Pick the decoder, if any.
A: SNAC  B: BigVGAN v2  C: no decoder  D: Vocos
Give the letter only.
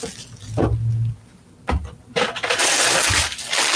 C